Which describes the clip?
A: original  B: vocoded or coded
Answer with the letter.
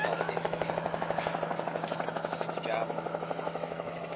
B